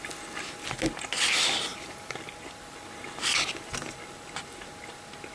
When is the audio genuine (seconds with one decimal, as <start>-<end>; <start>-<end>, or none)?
0.0-1.7; 2.4-5.3